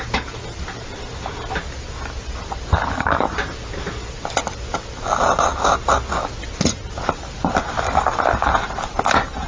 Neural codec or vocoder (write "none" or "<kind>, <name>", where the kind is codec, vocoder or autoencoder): none